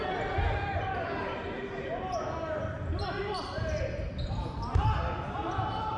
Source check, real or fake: real